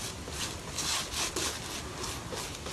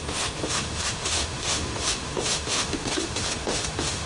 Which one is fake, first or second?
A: second